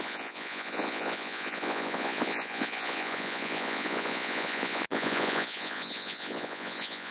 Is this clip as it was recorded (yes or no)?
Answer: no